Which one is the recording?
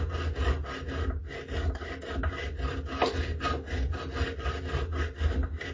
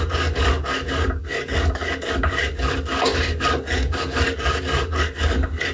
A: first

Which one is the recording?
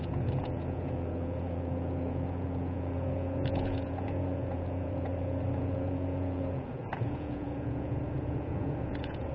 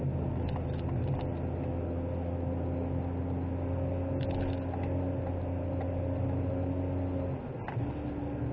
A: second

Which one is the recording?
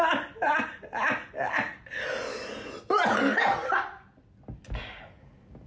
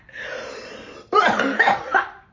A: first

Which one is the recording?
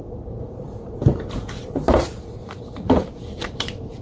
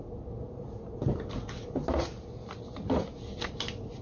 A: second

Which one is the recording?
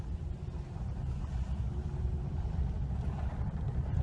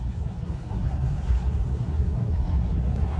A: first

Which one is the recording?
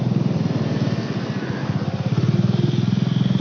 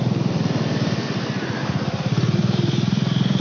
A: first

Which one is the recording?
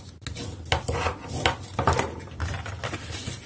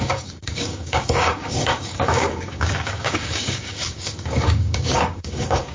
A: first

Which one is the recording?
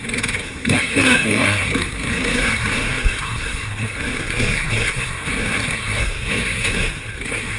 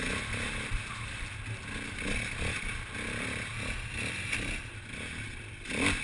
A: second